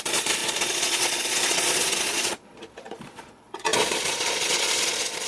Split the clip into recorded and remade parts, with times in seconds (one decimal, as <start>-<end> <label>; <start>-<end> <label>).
0.0-5.3 remade